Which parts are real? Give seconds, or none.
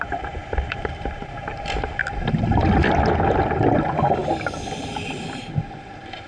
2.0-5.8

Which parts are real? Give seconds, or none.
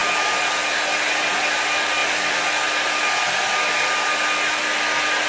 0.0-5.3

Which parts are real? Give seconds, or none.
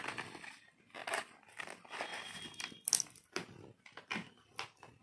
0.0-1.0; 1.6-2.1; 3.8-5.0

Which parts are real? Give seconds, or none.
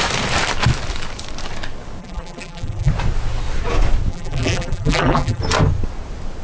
0.0-2.0; 2.9-4.1; 5.4-6.4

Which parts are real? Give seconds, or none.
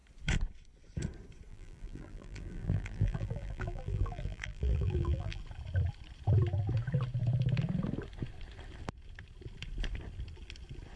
0.0-1.5; 5.4-11.0